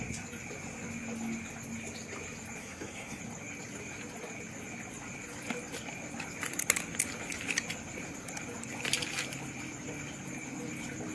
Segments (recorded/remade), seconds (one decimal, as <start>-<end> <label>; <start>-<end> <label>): 0.0-2.6 recorded; 2.6-3.2 remade; 3.2-11.1 recorded